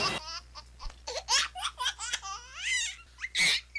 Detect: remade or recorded recorded